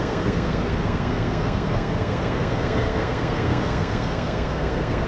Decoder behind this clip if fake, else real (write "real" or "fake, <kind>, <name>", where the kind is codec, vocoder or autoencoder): fake, codec, SNAC